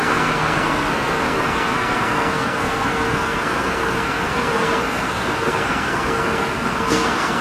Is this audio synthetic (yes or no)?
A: yes